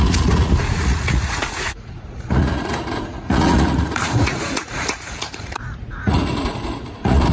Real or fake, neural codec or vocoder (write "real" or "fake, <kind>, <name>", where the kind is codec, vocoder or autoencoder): fake, vocoder, Vocos